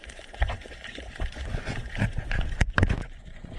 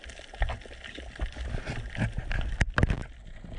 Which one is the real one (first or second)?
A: second